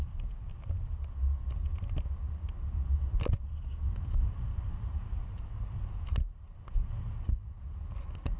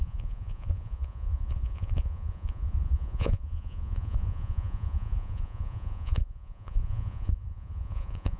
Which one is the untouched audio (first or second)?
first